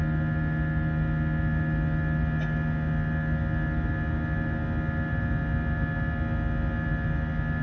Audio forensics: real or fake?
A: real